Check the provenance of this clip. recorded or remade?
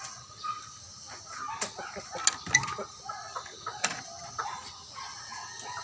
recorded